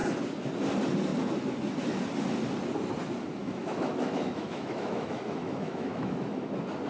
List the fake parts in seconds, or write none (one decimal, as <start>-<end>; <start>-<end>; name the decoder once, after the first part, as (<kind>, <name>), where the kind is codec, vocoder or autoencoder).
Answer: 3.4-6.5 (autoencoder, DAC-VAE)